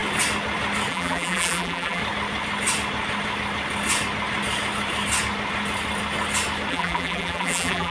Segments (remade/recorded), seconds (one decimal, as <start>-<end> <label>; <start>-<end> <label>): 0.0-0.9 recorded; 0.9-2.0 remade; 2.0-6.7 recorded; 6.7-7.9 remade